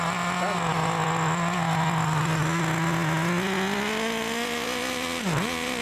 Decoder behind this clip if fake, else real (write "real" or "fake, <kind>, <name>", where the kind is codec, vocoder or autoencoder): real